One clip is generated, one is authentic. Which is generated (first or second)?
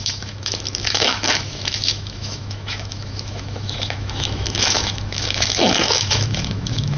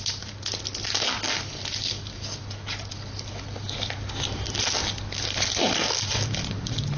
first